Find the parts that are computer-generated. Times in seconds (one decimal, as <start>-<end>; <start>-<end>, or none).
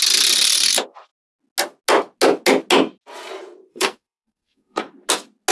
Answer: 3.7-4.9